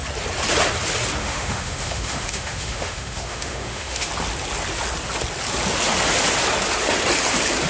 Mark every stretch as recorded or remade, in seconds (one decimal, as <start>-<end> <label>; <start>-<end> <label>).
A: 0.0-1.2 recorded; 1.2-4.1 remade; 4.1-7.7 recorded